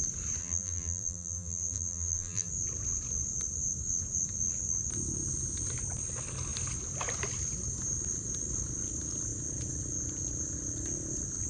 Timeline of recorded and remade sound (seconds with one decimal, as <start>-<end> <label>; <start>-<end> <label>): 0.0-0.4 recorded; 0.4-2.5 remade; 2.5-11.5 recorded